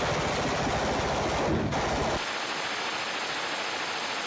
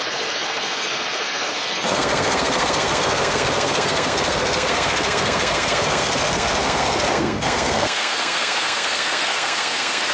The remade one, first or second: second